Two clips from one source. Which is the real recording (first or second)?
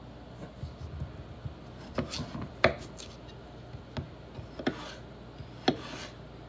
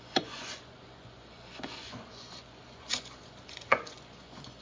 first